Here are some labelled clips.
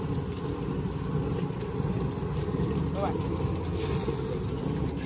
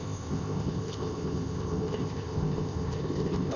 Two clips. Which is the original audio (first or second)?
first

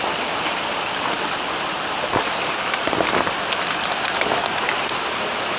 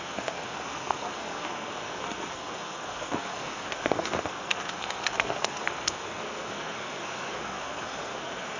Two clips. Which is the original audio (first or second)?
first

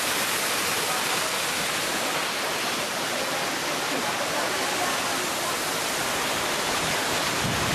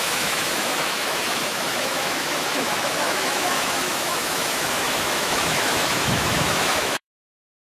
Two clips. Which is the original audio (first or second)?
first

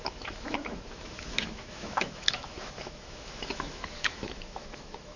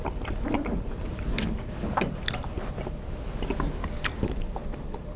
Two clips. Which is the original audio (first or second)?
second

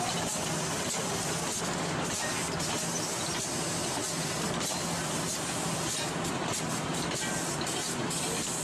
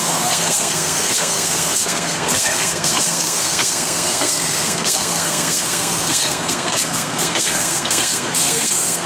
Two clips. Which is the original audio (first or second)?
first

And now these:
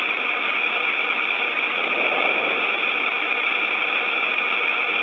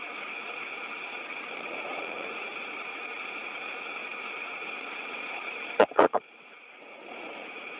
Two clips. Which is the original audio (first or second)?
first